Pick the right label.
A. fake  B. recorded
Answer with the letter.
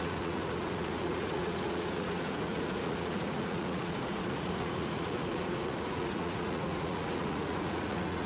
A